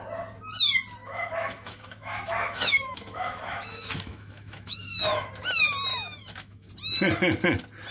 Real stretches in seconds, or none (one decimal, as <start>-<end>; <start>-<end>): 0.0-1.0; 5.3-5.9; 6.7-7.9